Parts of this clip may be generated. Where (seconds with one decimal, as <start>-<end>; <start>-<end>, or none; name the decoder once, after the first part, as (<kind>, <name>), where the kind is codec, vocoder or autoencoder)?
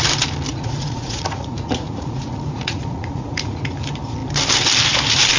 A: 0.5-3.7 (vocoder, Vocos)